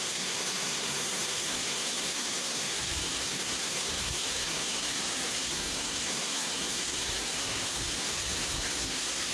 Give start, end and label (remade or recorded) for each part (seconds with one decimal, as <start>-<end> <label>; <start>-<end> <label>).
0.0-9.3 remade